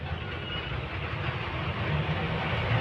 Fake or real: real